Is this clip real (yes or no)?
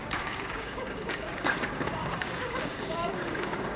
no